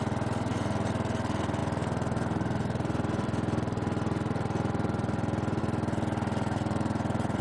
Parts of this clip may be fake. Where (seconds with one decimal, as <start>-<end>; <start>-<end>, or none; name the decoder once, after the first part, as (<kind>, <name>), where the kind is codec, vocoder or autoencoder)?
0.0-7.4 (vocoder, BigVGAN v2)